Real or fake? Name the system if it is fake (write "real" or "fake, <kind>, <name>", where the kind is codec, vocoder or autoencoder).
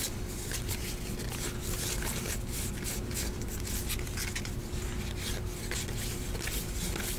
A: real